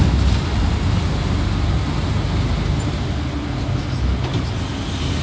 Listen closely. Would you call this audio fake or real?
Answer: real